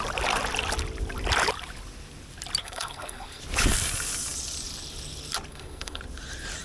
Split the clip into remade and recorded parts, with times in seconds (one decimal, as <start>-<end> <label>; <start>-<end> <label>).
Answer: 0.0-2.6 recorded; 2.6-3.4 remade; 3.4-5.5 recorded; 5.5-6.0 remade; 6.0-6.6 recorded